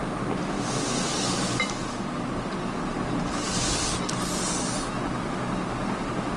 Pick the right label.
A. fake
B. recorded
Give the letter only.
B